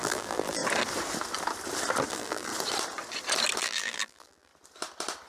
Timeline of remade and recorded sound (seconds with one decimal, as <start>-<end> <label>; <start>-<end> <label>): 0.0-0.6 remade; 0.6-2.1 recorded; 2.1-2.5 remade; 2.5-3.6 recorded; 3.6-4.5 remade; 4.5-5.3 recorded